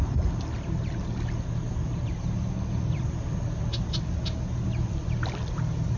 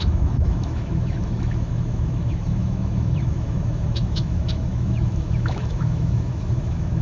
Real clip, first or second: first